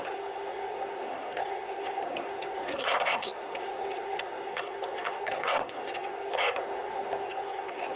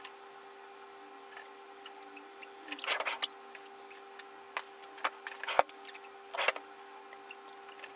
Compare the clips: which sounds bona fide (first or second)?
second